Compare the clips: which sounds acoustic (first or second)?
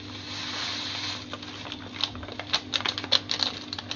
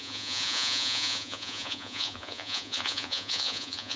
first